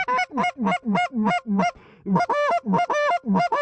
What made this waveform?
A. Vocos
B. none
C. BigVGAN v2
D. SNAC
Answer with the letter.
B